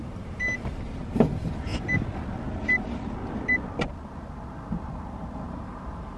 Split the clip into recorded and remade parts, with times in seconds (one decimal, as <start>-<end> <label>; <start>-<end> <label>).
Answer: 0.0-1.7 remade; 1.7-5.4 recorded; 5.4-6.2 remade